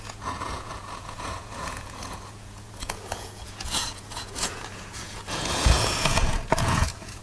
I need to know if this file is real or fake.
fake